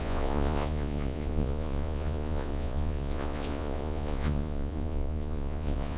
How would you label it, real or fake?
fake